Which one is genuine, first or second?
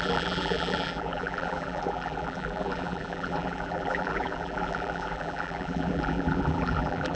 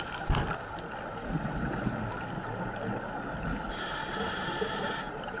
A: second